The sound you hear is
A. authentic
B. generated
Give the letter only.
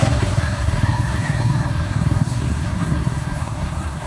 B